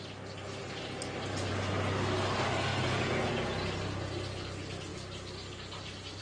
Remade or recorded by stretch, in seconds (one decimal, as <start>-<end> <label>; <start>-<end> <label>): 0.0-2.7 recorded; 2.7-3.3 remade; 3.3-6.2 recorded